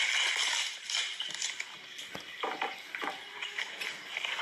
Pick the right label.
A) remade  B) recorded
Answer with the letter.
B